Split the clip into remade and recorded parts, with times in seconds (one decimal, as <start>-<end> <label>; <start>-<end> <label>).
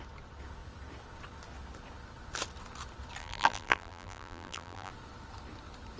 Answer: 0.0-3.2 recorded; 3.2-4.9 remade; 4.9-6.0 recorded